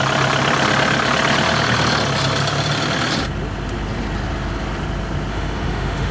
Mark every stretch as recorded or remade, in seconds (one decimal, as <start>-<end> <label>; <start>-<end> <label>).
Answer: 0.0-5.3 recorded; 5.3-6.1 remade